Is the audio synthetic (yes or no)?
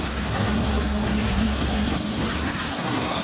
yes